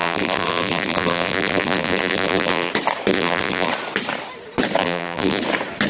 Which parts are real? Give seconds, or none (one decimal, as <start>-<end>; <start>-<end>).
2.7-3.1; 3.7-4.8; 5.4-5.9